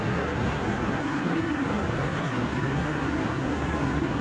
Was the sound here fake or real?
fake